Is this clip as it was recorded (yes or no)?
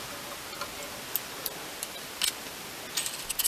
yes